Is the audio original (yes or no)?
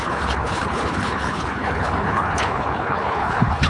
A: no